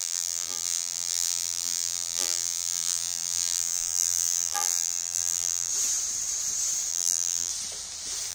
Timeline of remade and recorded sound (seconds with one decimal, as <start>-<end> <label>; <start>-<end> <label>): 0.0-5.7 remade; 5.7-6.9 recorded; 6.9-7.5 remade; 7.5-8.3 recorded